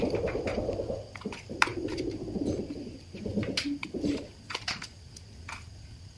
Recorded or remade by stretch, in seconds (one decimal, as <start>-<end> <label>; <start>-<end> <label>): 0.0-6.2 recorded